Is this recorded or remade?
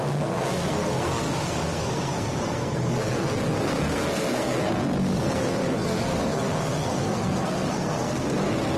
remade